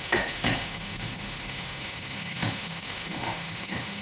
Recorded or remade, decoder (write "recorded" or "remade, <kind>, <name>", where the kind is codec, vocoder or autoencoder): remade, autoencoder, DAC-VAE